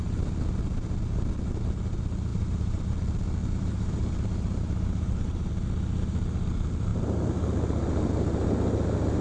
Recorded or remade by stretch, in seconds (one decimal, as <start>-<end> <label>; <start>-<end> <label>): 0.0-2.3 recorded; 2.3-2.9 remade; 2.9-3.4 recorded; 3.4-5.5 remade; 5.5-9.2 recorded